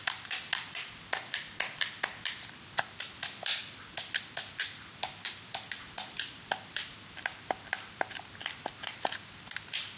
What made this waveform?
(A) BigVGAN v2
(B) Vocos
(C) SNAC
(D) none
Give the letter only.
A